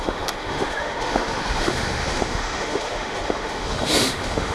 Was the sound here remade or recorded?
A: remade